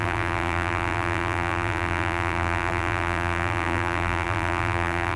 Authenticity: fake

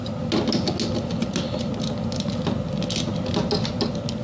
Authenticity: real